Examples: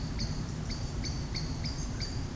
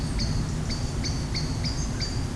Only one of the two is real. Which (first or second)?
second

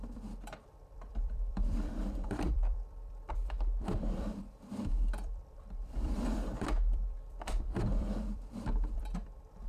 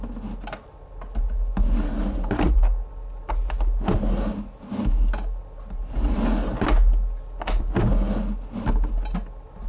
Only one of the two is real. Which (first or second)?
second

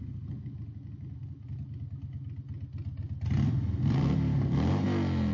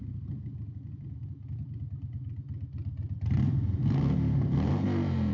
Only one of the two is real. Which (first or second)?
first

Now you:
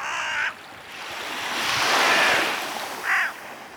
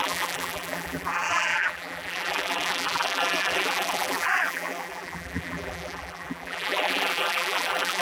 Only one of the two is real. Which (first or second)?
first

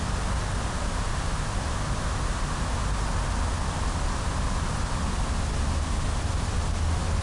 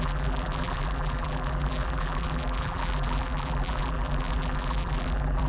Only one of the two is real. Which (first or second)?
first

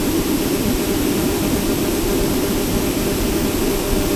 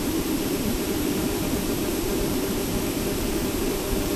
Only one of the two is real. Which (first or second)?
first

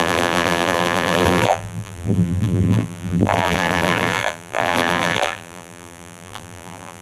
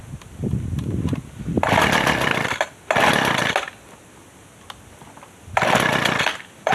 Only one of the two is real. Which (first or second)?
second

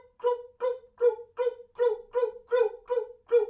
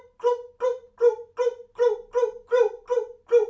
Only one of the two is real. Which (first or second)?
second